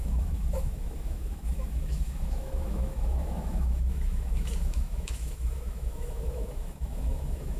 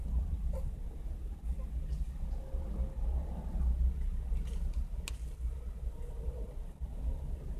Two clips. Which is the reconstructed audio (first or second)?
first